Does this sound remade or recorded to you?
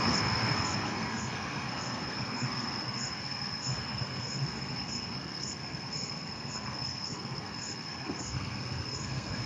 remade